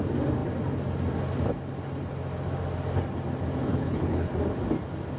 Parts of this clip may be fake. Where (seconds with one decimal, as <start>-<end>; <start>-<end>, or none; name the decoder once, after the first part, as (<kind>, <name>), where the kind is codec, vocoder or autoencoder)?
3.7-4.3 (codec, HILCodec)